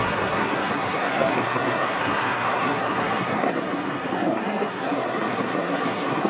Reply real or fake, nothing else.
fake